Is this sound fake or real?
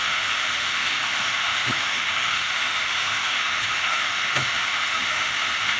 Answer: fake